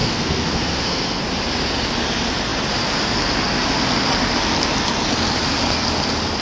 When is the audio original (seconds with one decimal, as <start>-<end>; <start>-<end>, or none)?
1.2-6.4